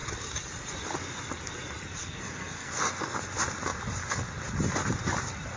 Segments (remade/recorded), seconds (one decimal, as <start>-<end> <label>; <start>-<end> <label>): 0.0-2.0 recorded; 2.0-3.2 remade; 3.2-5.6 recorded